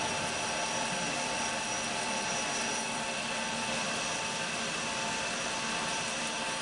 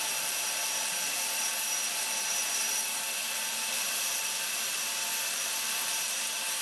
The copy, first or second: second